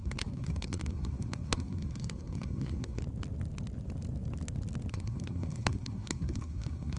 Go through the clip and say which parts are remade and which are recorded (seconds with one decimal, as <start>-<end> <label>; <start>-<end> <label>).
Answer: 0.0-3.0 remade; 3.0-4.9 recorded; 4.9-7.0 remade